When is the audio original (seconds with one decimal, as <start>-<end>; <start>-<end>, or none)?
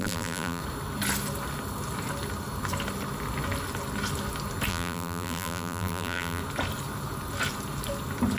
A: 0.6-4.7; 6.4-8.4